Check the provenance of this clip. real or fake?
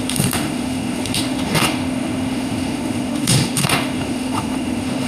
fake